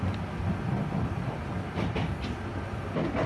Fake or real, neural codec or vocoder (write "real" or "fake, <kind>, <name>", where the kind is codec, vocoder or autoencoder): real